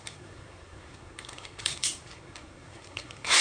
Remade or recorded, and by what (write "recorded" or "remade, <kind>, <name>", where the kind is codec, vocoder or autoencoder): remade, codec, SNAC